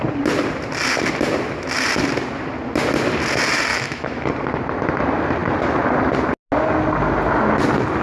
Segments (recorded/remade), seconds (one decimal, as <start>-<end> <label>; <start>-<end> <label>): 0.0-3.7 recorded; 3.7-4.3 remade; 4.3-8.0 recorded